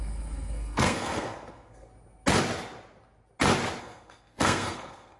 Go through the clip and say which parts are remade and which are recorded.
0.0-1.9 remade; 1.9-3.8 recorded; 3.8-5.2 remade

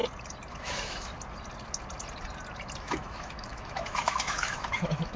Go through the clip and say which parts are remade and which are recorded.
0.0-0.5 recorded; 0.5-1.1 remade; 1.1-2.8 recorded; 2.8-5.2 remade

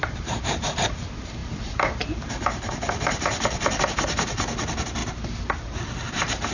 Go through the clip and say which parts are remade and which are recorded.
0.0-5.0 remade; 5.0-6.1 recorded; 6.1-6.5 remade

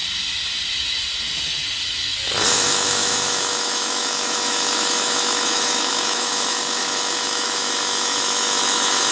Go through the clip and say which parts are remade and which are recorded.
0.0-2.5 recorded; 2.5-9.1 remade